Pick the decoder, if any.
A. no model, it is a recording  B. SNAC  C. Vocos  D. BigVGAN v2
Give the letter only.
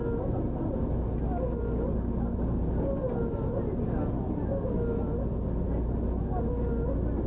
A